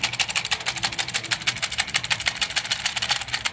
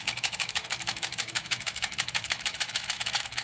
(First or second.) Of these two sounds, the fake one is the second